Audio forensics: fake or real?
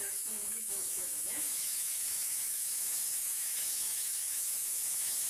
fake